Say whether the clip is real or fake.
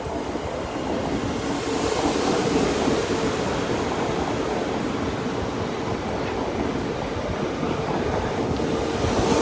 real